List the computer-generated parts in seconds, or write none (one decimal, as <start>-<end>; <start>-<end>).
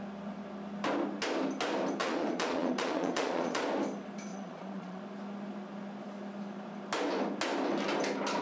2.0-3.6; 4.3-5.0